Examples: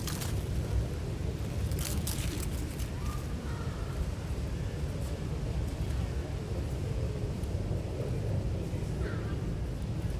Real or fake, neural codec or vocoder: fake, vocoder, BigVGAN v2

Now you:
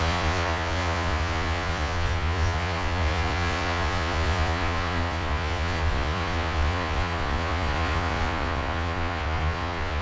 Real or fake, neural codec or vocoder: fake, vocoder, Vocos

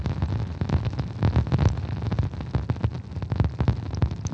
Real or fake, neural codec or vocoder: real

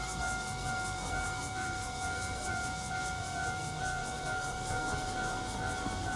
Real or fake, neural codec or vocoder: fake, codec, SNAC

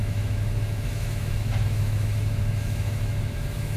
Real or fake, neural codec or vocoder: fake, autoencoder, DAC-VAE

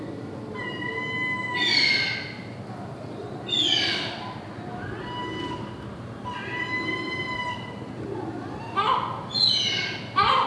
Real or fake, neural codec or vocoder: real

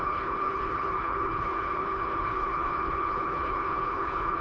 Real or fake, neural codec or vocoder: fake, codec, HILCodec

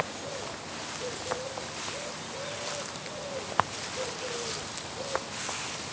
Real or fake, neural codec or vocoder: real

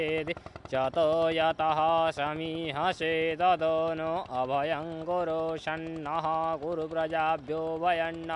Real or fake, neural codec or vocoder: real